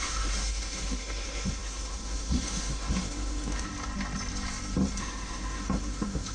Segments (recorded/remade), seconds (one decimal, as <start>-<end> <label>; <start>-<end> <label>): 0.0-3.7 remade; 3.7-5.0 recorded; 5.0-6.3 remade